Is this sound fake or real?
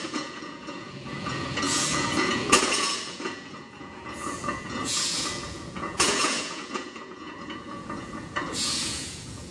fake